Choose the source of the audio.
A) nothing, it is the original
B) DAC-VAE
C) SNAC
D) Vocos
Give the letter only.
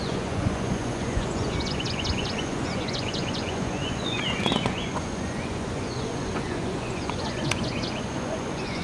D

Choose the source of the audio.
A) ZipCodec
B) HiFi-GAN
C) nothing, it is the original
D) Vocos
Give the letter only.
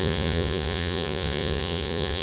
D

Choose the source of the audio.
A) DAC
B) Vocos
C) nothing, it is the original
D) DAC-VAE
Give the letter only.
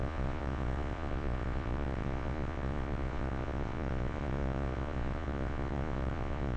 B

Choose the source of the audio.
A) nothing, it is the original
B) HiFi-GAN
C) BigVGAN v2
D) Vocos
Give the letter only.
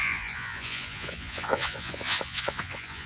D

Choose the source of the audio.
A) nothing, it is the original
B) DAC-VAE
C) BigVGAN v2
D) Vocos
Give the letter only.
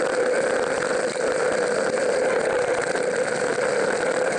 A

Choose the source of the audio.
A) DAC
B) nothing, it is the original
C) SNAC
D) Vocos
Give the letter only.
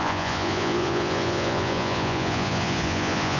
D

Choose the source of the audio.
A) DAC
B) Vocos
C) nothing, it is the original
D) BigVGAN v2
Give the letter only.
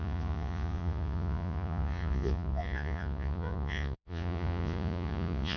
B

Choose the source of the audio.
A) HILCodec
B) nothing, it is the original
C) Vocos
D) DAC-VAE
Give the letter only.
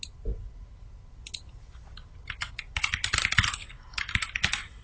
B